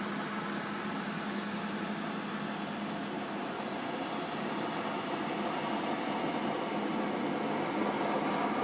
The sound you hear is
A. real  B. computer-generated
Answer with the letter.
A